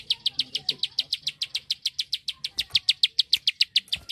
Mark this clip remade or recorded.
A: recorded